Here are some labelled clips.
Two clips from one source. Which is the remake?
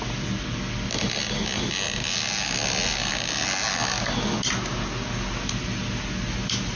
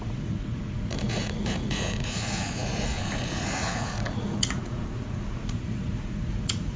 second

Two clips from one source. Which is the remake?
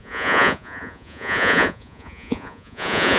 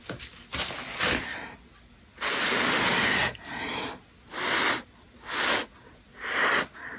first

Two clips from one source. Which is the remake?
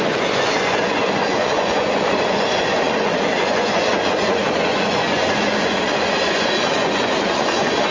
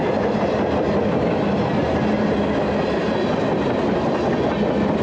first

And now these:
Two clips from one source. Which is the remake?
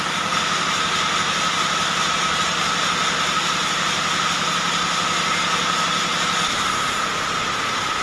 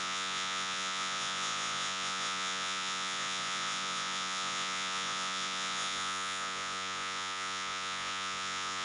second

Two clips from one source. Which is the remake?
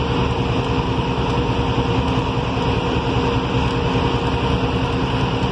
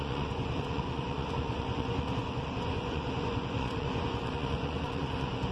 second